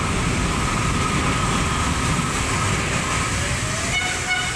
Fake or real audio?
real